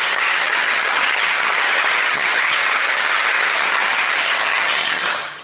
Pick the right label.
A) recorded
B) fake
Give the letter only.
B